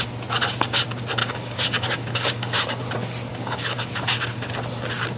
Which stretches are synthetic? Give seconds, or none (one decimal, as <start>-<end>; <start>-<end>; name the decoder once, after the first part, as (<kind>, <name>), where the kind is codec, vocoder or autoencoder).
1.2-2.8 (codec, DAC); 3.3-3.9